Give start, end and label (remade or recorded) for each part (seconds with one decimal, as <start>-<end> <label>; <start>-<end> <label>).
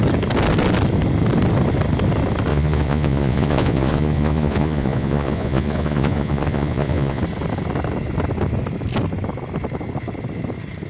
0.0-2.5 recorded; 2.5-7.2 remade; 7.2-10.9 recorded